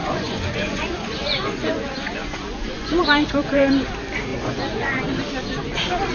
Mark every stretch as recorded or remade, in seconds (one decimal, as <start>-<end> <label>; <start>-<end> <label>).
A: 0.0-3.7 remade; 3.7-4.3 recorded; 4.3-5.0 remade; 5.0-6.1 recorded